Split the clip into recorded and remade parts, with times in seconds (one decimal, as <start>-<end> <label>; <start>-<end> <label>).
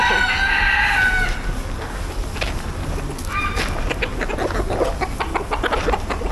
0.0-6.3 recorded